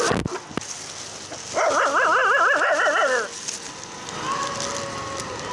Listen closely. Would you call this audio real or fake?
real